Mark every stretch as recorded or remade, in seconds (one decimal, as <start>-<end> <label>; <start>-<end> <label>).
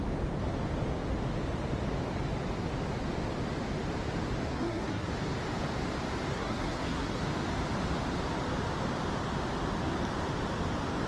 0.0-4.5 recorded; 4.5-5.1 remade; 5.1-6.3 recorded; 6.3-7.2 remade; 7.2-11.1 recorded